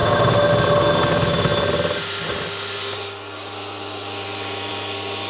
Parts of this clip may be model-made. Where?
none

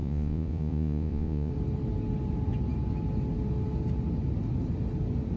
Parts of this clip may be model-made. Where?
0.0-1.5 (vocoder, Vocos)

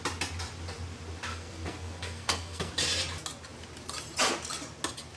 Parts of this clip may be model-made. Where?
1.3-2.7 (codec, SNAC)

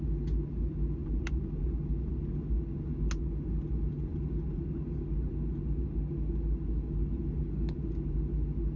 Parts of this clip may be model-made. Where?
none

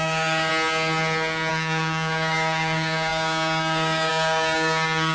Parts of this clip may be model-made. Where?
0.0-0.5 (codec, DAC); 1.5-5.1